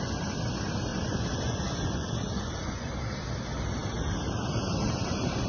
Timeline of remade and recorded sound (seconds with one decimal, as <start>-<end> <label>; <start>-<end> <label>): 0.0-0.9 recorded; 0.9-3.0 remade; 3.0-5.5 recorded